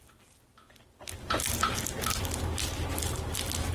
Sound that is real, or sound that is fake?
real